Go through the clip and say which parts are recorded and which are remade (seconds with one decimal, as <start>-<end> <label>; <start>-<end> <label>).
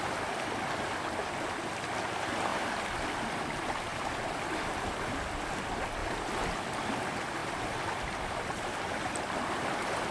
0.0-3.9 recorded; 3.9-5.4 remade; 5.4-6.0 recorded; 6.0-7.0 remade; 7.0-7.4 recorded; 7.4-10.1 remade